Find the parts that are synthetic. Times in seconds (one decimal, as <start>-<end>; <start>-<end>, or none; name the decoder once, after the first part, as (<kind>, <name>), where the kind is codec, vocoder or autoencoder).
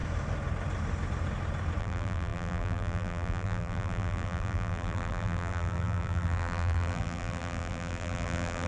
1.8-8.7 (vocoder, BigVGAN v2)